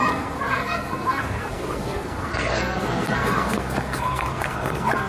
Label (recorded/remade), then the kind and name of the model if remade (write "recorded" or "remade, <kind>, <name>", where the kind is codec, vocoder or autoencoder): remade, codec, SNAC